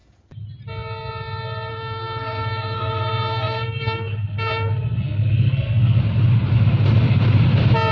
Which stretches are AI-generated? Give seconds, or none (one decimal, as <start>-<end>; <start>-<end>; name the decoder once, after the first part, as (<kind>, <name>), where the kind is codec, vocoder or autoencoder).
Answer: 1.7-6.0 (codec, SNAC)